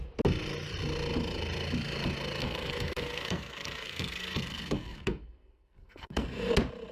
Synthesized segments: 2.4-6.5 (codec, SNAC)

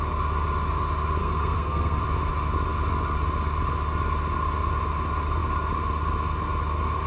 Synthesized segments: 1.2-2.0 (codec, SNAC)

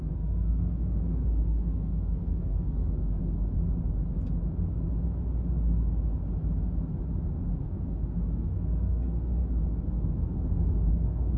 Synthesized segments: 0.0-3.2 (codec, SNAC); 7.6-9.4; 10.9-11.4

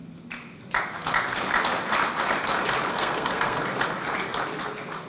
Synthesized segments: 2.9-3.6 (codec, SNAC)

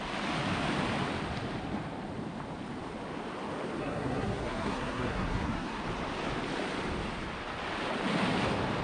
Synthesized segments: 3.8-5.8 (codec, SNAC)

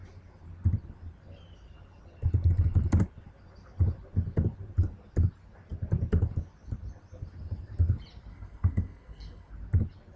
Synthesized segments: 8.3-9.5 (codec, SNAC)

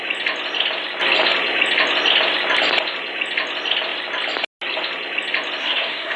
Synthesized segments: 5.6-6.2 (codec, SNAC)

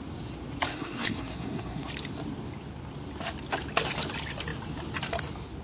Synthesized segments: 0.7-1.9 (codec, SNAC)